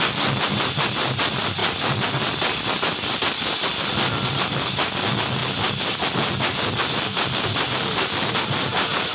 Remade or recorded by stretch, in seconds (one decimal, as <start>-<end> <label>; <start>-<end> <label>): 0.0-9.1 recorded